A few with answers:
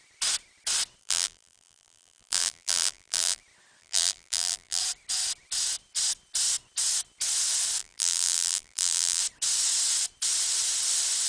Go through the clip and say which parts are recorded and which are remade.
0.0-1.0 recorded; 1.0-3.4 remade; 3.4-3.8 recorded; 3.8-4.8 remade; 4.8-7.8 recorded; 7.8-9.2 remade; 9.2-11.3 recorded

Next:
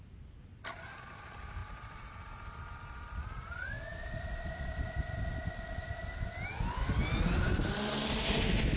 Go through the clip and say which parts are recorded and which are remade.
0.0-8.8 recorded